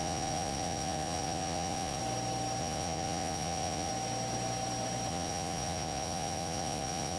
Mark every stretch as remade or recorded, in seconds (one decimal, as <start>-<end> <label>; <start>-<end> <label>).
0.0-2.0 remade; 2.0-2.6 recorded; 2.6-3.9 remade; 3.9-5.1 recorded; 5.1-7.2 remade